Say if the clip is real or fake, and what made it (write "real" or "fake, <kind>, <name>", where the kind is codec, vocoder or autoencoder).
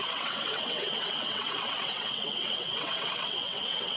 fake, vocoder, WaveNeXt